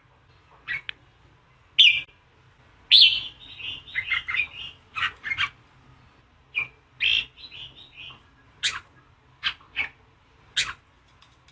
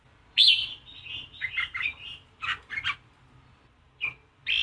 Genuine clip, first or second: first